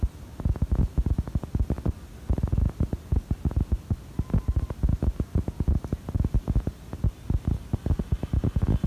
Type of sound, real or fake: real